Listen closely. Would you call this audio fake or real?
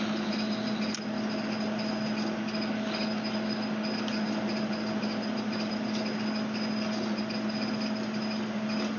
real